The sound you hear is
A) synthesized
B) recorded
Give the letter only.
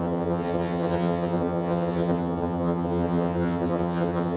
A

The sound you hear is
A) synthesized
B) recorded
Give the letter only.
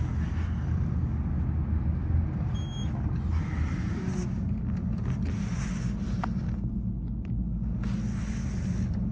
B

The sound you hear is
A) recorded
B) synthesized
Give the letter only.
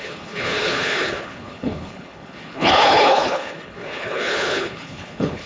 B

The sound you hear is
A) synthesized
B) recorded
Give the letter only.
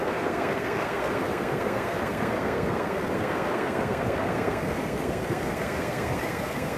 A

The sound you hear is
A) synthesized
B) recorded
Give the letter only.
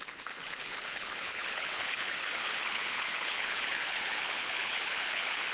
A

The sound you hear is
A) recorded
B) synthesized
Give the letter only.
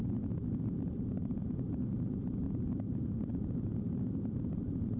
B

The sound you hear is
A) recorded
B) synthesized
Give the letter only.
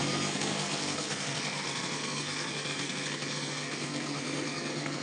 B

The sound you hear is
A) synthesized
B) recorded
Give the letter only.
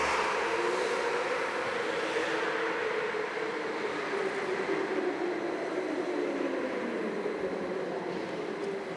B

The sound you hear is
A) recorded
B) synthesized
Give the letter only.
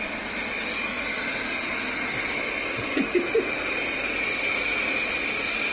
A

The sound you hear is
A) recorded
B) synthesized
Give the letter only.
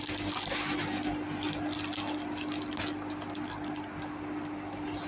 A